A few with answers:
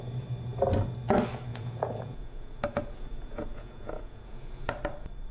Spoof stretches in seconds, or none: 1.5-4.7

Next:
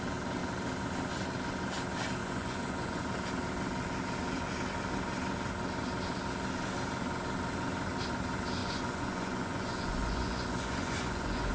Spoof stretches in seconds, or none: 2.2-3.0; 8.6-11.5

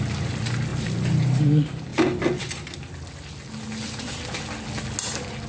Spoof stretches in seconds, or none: 0.7-1.4